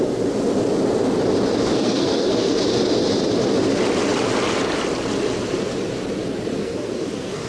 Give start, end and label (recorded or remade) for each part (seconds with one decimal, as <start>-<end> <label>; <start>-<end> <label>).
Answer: 0.0-1.6 recorded; 1.6-2.6 remade; 2.6-6.6 recorded; 6.6-7.5 remade